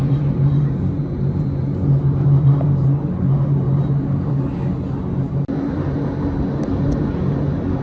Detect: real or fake real